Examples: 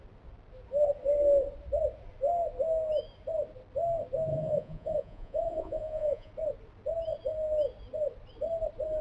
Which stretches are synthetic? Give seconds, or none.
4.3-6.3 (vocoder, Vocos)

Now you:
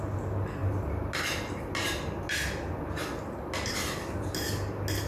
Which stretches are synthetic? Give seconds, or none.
none